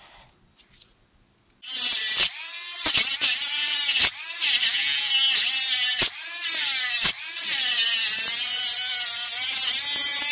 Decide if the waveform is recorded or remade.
recorded